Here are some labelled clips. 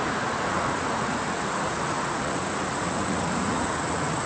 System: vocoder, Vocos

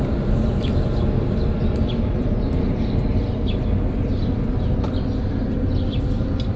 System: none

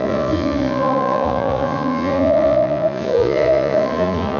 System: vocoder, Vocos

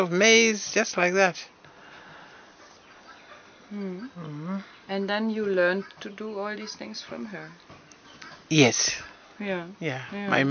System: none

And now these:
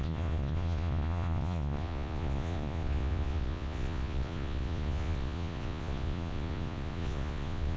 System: vocoder, Vocos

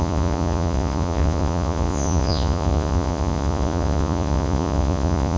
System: vocoder, Vocos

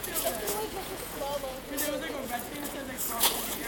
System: vocoder, Vocos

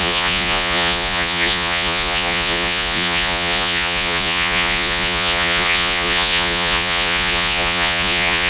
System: vocoder, Vocos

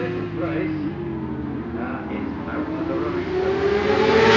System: none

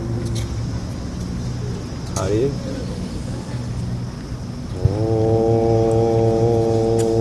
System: none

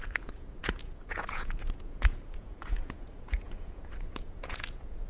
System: vocoder, Vocos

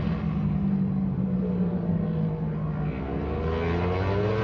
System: none